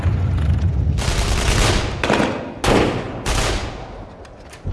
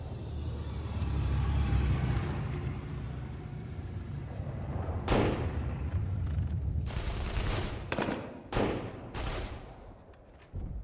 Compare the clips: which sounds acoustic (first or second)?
first